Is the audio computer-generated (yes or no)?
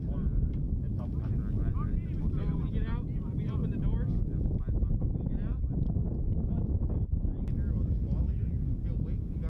no